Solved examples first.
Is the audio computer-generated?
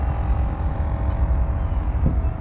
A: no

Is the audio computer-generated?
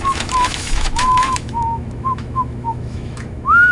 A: yes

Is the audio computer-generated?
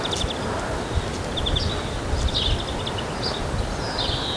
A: no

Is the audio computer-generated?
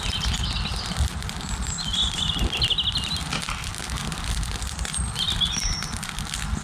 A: no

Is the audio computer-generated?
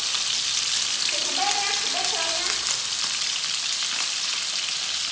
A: no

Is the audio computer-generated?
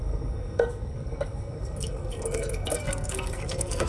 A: yes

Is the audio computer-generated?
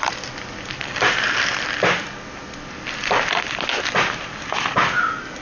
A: no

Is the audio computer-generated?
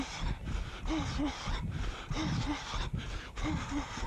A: no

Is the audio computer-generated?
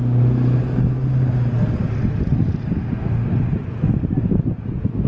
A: no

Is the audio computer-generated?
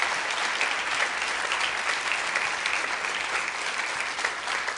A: no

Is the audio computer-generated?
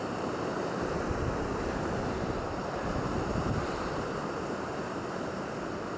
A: yes